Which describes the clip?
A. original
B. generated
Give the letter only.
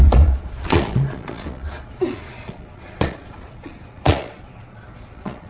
B